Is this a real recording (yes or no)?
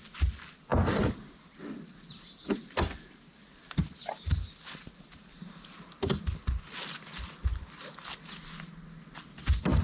yes